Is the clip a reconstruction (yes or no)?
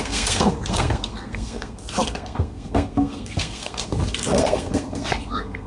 yes